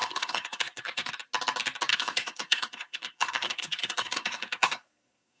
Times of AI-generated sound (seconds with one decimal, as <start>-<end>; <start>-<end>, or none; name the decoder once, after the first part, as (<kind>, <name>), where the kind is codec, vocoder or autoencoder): 0.0-1.1 (codec, SNAC); 1.9-5.4